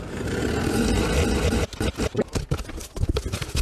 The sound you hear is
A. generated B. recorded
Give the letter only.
B